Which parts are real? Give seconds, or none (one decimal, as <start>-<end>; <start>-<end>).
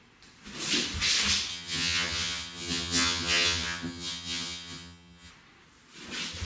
0.0-1.5; 5.3-6.4